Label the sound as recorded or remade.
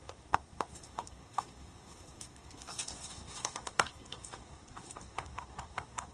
remade